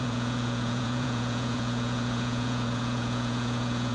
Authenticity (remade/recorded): remade